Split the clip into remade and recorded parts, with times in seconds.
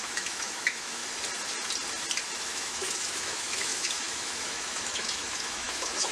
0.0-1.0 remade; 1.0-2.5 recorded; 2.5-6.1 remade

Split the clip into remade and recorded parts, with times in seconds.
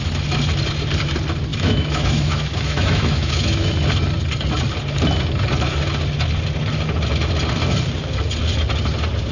0.0-1.5 recorded; 1.5-3.7 remade; 3.7-9.3 recorded